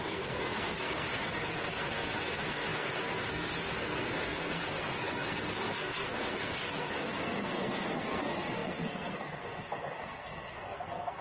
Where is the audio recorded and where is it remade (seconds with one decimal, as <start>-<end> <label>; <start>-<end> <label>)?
0.0-11.2 remade